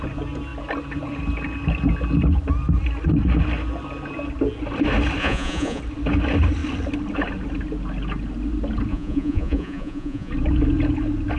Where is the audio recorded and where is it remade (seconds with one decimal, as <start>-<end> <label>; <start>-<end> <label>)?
0.0-5.2 recorded; 5.2-5.8 remade; 5.8-8.9 recorded; 8.9-10.3 remade; 10.3-11.4 recorded